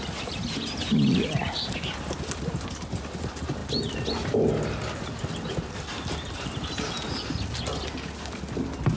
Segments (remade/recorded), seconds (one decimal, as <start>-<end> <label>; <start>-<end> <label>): 0.0-9.0 recorded